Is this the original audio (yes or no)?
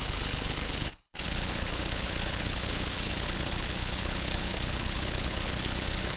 no